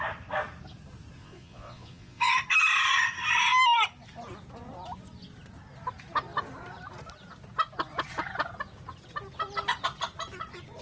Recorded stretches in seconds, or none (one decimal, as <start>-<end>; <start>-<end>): 0.0-1.2; 2.3-10.8